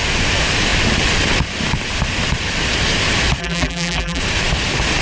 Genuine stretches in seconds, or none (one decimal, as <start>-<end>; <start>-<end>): 0.0-3.4; 4.2-5.0